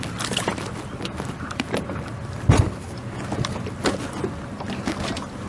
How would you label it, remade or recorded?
recorded